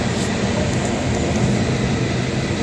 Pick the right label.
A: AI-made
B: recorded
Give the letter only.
B